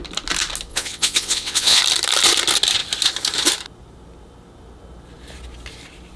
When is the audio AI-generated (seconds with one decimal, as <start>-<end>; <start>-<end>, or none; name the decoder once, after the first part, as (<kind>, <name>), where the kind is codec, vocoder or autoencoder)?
0.7-1.8 (vocoder, WaveNeXt)